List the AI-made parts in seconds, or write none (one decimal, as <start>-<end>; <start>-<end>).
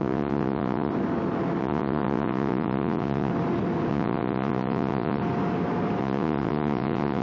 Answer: 0.0-0.9; 1.6-3.3; 3.9-5.2; 6.0-7.2